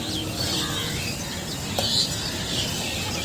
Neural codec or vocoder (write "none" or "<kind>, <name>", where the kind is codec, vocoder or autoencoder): none